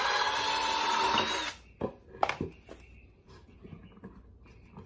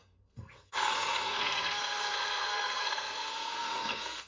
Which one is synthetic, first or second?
second